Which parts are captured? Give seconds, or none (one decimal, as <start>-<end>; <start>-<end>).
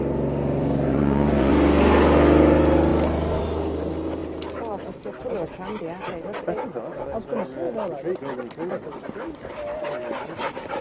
0.0-0.9; 1.5-10.8